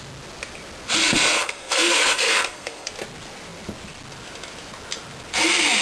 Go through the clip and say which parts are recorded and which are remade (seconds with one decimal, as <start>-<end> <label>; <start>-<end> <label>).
0.0-1.0 recorded; 1.0-2.9 remade; 2.9-5.8 recorded